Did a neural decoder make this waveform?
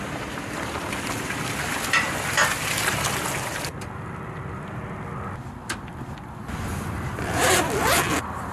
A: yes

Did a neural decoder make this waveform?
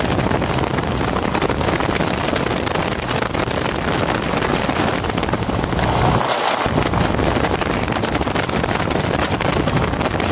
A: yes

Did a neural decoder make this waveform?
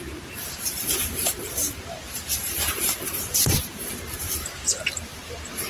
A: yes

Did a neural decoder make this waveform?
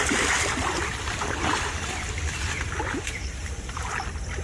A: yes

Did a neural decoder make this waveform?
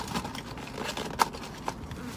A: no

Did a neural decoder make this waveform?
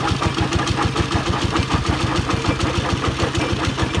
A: no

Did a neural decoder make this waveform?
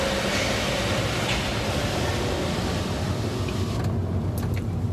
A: no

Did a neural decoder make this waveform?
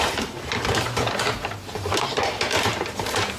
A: yes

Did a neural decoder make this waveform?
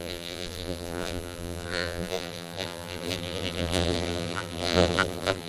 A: yes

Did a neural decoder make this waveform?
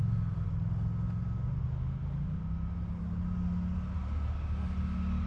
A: no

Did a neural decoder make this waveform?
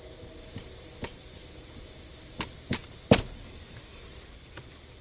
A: no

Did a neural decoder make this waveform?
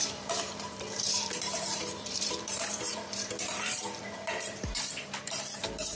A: yes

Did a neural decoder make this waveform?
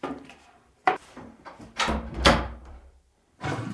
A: yes